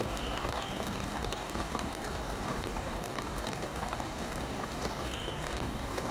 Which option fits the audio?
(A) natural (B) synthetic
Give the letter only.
B